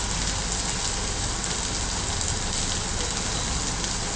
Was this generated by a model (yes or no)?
no